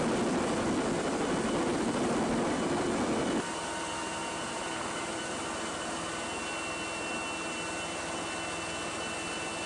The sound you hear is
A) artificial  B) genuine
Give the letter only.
B